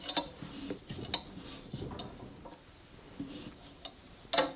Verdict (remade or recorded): recorded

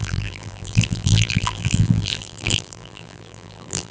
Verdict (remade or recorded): remade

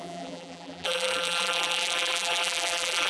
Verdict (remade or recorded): remade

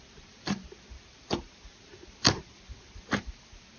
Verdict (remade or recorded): recorded